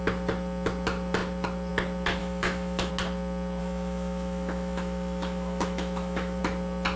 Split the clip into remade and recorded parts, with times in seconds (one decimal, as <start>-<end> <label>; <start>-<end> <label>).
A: 0.0-2.2 recorded; 2.2-2.9 remade; 2.9-3.6 recorded; 3.6-6.4 remade; 6.4-7.0 recorded